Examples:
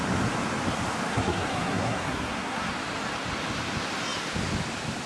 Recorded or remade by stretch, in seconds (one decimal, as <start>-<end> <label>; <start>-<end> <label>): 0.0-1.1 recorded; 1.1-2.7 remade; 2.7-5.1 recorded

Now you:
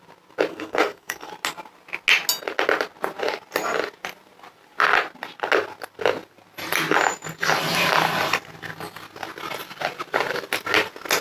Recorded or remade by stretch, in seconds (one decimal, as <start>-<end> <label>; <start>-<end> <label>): 0.0-0.5 recorded; 0.5-1.3 remade; 1.3-11.2 recorded

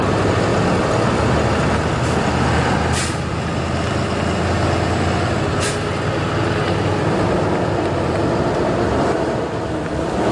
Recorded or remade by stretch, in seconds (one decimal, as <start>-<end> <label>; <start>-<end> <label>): 0.0-10.3 recorded

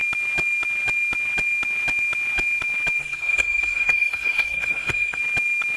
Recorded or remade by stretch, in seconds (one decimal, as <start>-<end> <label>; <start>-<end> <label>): 0.0-3.0 recorded; 3.0-5.2 remade; 5.2-5.8 recorded

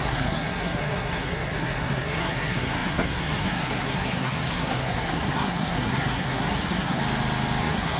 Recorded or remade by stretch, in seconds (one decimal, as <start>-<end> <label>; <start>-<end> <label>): 0.0-7.0 remade; 7.0-7.6 recorded; 7.6-8.0 remade

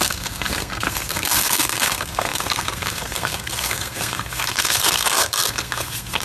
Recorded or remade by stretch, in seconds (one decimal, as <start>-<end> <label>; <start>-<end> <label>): 0.0-6.2 remade